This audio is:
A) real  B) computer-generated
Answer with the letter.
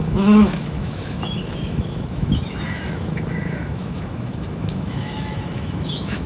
B